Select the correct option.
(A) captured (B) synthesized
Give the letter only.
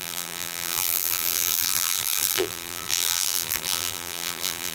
B